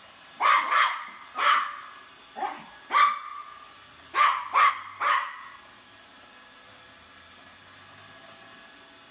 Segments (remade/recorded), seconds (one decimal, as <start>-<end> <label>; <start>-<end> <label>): 0.0-9.1 recorded